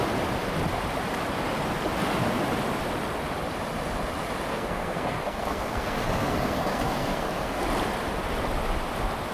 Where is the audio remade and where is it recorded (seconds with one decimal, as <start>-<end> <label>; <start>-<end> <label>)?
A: 0.0-4.5 recorded; 4.5-7.6 remade; 7.6-9.3 recorded